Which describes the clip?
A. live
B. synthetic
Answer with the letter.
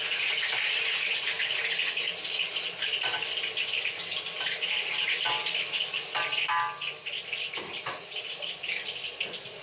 A